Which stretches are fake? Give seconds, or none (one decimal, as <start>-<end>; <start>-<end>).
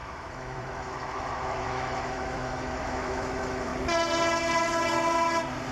0.0-3.7